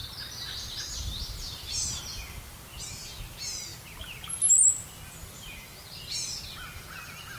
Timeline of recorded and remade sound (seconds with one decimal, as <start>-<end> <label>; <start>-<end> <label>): 0.0-7.4 recorded